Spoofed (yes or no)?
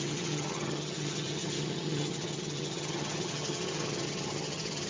yes